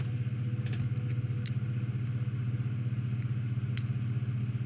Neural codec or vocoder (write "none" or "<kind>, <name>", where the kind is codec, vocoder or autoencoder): none